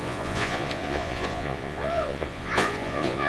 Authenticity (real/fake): fake